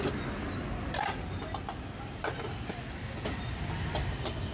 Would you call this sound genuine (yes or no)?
yes